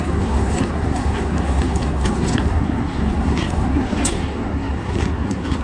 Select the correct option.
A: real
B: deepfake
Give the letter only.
B